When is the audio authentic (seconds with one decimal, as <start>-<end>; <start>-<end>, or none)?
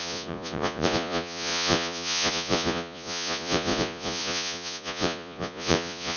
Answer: none